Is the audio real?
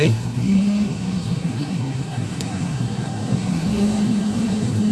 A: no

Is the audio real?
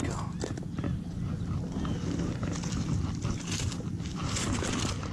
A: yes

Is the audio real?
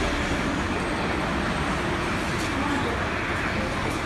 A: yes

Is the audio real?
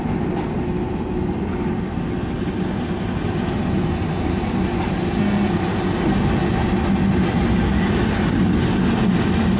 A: yes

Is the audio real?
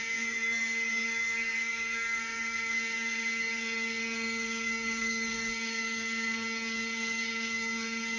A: no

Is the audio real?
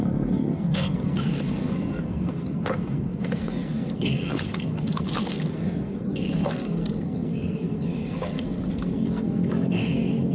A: no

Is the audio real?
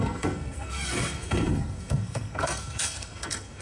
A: no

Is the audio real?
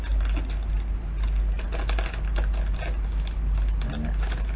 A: yes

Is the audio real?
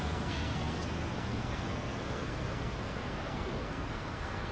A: no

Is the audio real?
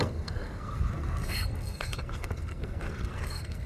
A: no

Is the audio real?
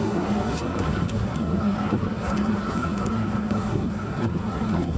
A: no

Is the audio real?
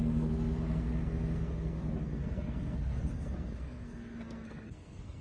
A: no